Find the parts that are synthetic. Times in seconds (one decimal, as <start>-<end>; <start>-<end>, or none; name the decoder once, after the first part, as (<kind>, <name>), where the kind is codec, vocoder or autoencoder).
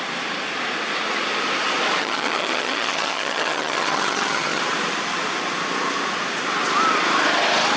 2.0-4.6 (vocoder, HiFi-GAN)